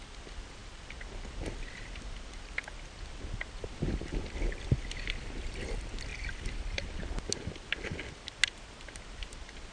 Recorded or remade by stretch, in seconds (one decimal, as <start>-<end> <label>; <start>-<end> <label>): 0.0-9.7 recorded